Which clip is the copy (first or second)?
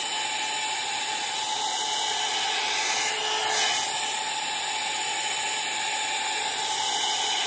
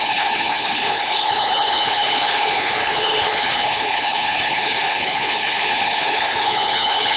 second